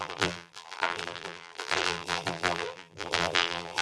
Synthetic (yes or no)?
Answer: yes